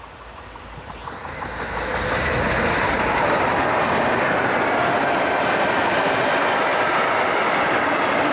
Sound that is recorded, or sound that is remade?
recorded